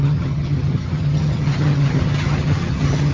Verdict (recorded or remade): remade